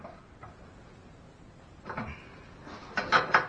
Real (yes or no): yes